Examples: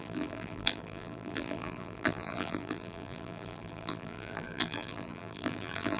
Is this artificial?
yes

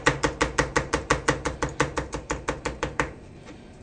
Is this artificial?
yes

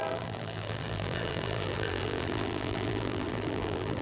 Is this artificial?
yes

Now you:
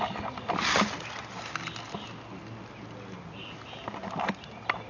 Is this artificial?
no